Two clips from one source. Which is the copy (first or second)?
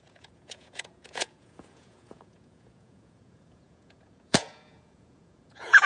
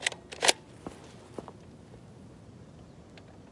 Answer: first